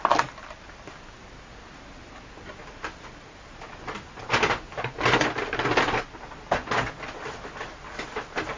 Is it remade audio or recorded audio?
recorded